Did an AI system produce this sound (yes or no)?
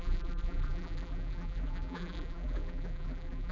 yes